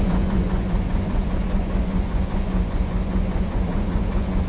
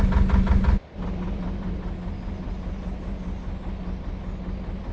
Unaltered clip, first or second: second